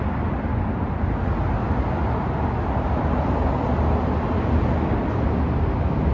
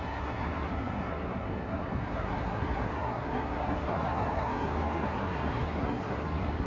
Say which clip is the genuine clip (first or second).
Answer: first